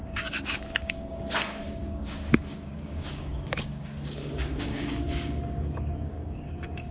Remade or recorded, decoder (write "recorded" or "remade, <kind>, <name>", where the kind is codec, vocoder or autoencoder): remade, codec, DAC